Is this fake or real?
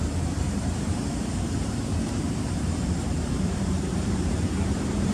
fake